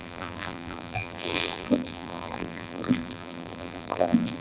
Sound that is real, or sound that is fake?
fake